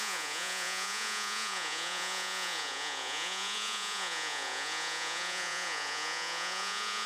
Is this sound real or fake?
fake